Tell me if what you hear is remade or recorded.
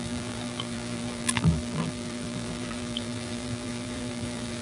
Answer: remade